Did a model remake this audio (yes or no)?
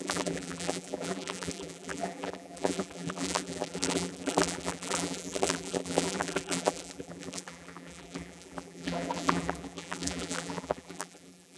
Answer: yes